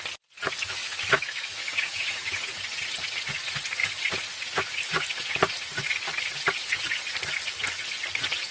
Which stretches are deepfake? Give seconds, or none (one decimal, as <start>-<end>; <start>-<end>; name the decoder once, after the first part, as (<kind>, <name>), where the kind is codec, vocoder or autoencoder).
0.8-2.4 (autoencoder, DAC-VAE)